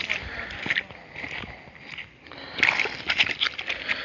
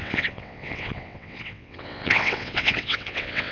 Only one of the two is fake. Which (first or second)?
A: second